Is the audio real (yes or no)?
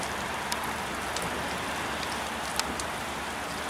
yes